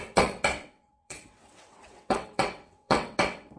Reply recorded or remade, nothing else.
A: remade